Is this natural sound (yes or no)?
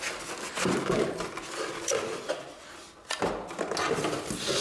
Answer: yes